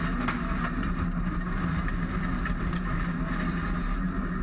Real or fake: real